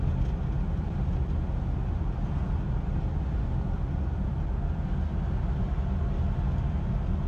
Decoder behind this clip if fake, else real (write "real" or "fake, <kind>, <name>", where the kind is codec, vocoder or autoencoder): real